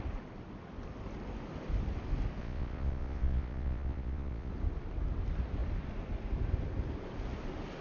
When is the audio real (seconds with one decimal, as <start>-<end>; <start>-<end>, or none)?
0.0-2.4; 4.5-7.8